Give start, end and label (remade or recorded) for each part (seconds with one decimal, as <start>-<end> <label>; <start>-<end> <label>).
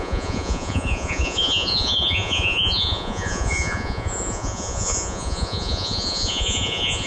0.0-7.1 remade